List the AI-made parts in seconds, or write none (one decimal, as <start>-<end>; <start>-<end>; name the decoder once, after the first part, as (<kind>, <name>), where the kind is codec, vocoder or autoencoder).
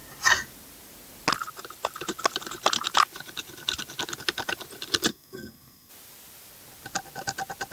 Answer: 5.1-5.9 (codec, SNAC)